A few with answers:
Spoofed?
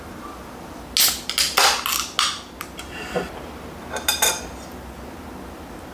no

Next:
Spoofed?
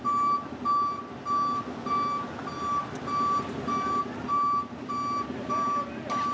no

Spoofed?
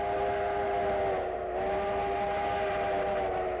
no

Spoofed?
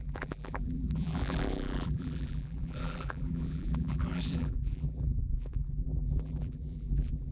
yes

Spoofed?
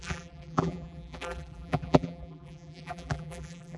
yes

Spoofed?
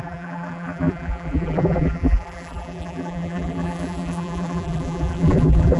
yes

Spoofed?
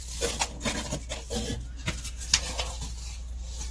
no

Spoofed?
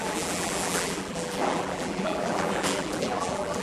yes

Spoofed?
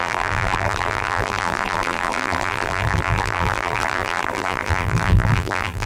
yes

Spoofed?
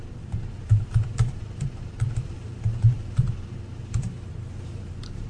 yes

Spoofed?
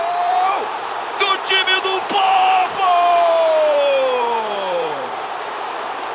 yes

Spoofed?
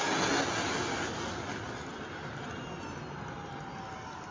no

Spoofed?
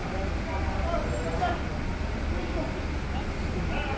no